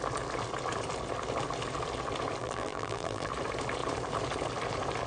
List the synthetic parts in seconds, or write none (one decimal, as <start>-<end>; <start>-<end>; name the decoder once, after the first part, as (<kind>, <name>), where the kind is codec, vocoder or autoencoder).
2.4-3.3 (vocoder, BigVGAN v2)